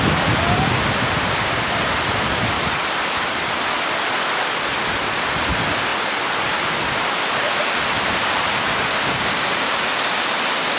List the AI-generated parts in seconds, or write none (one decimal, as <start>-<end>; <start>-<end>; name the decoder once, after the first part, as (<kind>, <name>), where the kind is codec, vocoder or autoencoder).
none